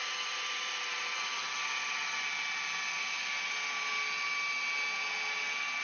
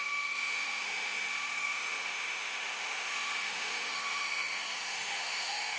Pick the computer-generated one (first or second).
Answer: second